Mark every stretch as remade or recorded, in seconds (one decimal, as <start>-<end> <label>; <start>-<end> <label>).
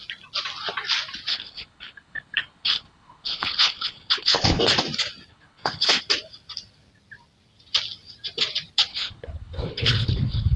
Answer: 0.0-1.3 recorded; 1.3-4.6 remade; 4.6-5.3 recorded; 5.3-6.0 remade; 6.0-8.9 recorded; 8.9-10.6 remade